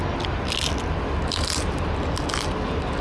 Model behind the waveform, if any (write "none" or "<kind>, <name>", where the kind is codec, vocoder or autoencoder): none